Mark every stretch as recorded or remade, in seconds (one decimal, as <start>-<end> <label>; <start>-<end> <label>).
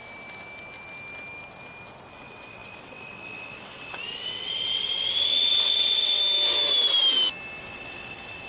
0.0-2.1 recorded; 2.1-6.2 remade; 6.2-7.6 recorded; 7.6-8.5 remade